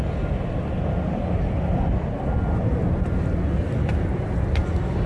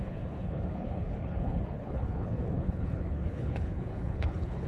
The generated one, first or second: second